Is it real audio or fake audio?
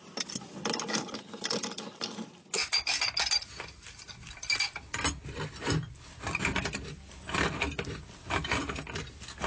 real